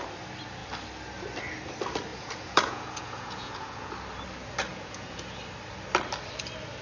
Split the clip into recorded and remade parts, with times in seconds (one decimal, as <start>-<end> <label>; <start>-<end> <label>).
0.0-2.1 recorded; 2.1-3.9 remade; 3.9-4.7 recorded; 4.7-5.4 remade; 5.4-6.8 recorded

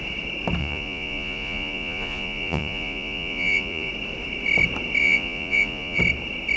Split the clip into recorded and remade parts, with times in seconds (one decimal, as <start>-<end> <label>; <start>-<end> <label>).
0.0-0.6 recorded; 0.6-3.9 remade; 3.9-5.0 recorded; 5.0-6.0 remade; 6.0-6.6 recorded

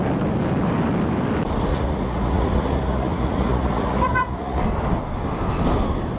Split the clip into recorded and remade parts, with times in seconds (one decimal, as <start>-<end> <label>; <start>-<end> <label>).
0.0-1.7 recorded; 1.7-4.6 remade; 4.6-6.2 recorded

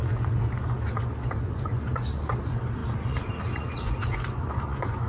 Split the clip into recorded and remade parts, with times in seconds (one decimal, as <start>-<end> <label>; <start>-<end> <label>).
0.0-5.1 remade

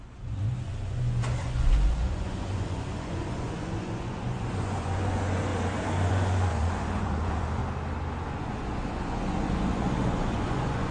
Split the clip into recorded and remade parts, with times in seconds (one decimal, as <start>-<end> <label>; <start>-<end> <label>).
0.0-5.5 remade; 5.5-6.1 recorded; 6.1-7.6 remade; 7.6-8.2 recorded; 8.2-10.9 remade